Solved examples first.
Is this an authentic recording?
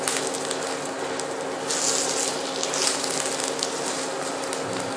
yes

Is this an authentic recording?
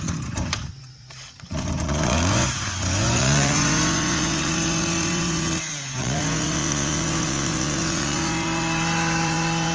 no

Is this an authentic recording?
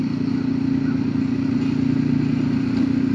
yes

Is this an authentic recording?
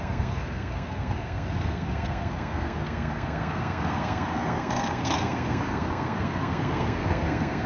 no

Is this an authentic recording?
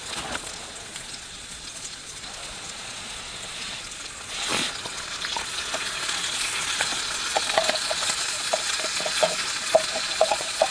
no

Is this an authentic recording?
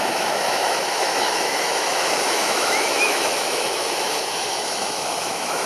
no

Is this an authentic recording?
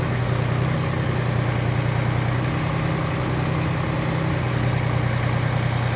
yes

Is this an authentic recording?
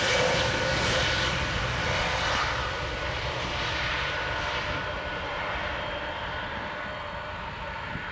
yes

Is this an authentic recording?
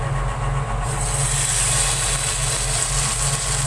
yes